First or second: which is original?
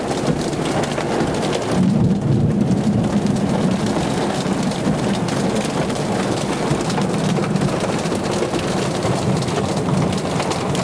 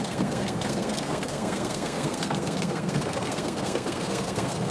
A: first